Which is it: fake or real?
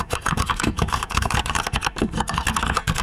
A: fake